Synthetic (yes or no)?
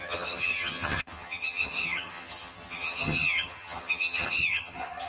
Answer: yes